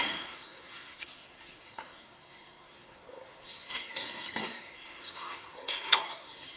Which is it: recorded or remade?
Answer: remade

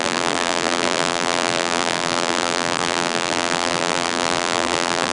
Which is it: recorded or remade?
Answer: remade